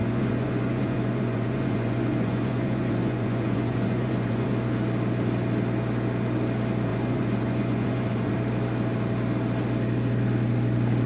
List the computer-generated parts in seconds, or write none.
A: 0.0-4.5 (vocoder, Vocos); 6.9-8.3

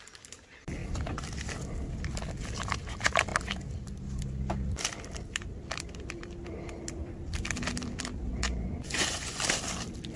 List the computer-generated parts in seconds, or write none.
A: 8.3-9.4 (vocoder, Vocos)

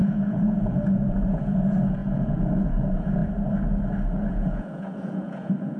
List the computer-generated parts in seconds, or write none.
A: 0.0-3.2 (vocoder, Vocos); 4.3-5.8

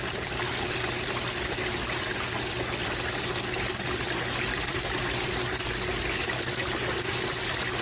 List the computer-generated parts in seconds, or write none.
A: none

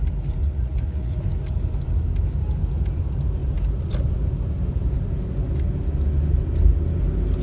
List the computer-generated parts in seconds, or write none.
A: 0.4-1.2 (vocoder, Vocos)

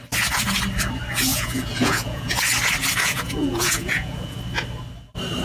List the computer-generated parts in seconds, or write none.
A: 1.3-2.4 (vocoder, Vocos); 3.0-4.4

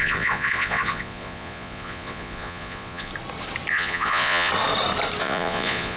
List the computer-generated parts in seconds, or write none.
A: 0.0-3.1 (vocoder, Vocos); 3.7-4.5; 5.2-6.0